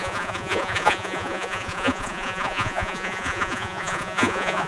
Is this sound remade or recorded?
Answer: remade